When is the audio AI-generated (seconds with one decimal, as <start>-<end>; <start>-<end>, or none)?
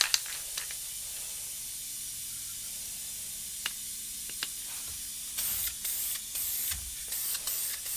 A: none